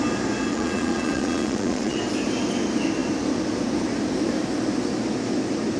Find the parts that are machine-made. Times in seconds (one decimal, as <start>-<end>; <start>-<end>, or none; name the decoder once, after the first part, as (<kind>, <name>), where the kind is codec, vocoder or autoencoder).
0.5-2.0 (vocoder, Vocos)